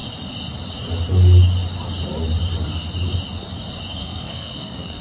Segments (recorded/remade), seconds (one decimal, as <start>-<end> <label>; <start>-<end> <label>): 0.0-4.0 recorded; 4.0-5.0 remade